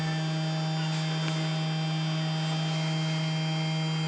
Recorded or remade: recorded